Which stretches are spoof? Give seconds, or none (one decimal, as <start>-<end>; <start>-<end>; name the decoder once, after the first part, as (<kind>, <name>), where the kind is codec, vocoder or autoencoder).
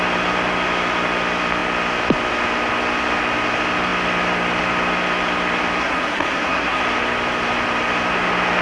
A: 5.8-6.8 (codec, SNAC)